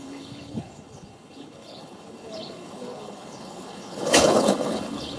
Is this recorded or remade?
remade